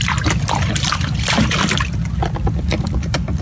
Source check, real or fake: real